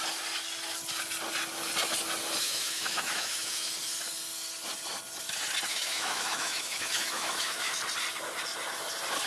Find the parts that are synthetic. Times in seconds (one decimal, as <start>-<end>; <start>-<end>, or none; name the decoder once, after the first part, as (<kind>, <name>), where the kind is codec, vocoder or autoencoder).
2.4-3.7 (autoencoder, DAC-VAE); 5.7-7.8